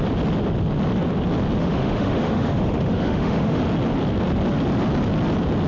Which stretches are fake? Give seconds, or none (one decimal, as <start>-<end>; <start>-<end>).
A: 1.6-3.6